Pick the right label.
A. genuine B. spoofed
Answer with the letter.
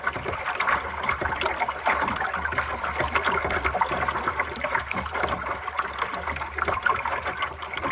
A